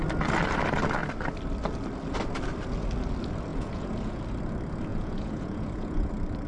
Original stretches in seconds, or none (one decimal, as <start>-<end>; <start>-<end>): 0.0-3.5; 4.2-4.9; 6.1-6.5